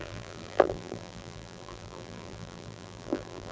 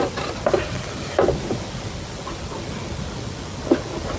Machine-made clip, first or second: first